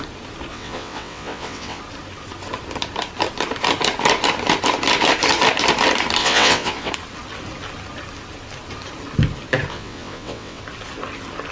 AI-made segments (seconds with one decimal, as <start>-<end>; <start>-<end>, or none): 0.5-1.8; 6.2-6.9; 9.7-10.6

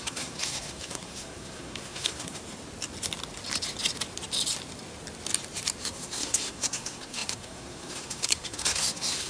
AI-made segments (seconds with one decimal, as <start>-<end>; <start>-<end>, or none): 0.0-2.4; 5.8-9.3